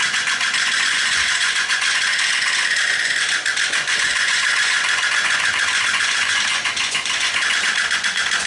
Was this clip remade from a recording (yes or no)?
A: yes